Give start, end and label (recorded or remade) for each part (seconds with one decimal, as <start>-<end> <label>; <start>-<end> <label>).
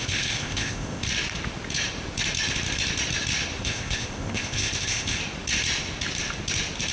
0.0-1.0 remade; 1.0-3.6 recorded; 3.6-5.2 remade; 5.2-6.9 recorded